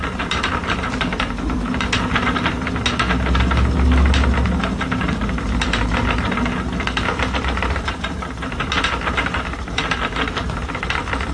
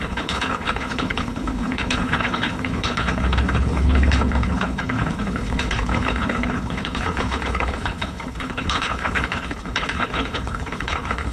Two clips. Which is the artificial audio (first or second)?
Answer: second